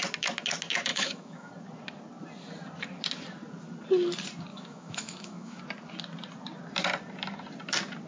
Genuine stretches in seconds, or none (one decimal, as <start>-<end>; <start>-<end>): 0.0-0.9; 1.5-4.5; 5.6-8.1